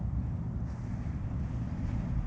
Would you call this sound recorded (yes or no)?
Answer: yes